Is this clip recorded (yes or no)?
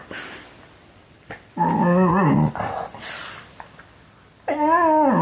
yes